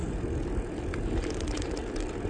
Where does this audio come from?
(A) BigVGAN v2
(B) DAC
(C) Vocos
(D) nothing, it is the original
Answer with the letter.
D